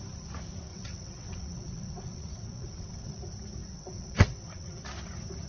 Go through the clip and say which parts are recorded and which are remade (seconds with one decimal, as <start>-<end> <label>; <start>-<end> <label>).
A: 0.0-0.7 recorded; 0.7-3.2 remade; 3.2-3.6 recorded; 3.6-4.8 remade; 4.8-5.5 recorded